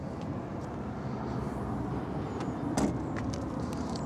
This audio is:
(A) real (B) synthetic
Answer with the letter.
A